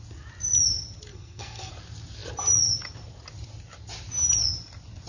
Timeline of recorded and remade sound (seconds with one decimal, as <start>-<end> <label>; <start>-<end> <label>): 0.0-1.1 recorded; 1.1-1.7 remade; 1.7-5.1 recorded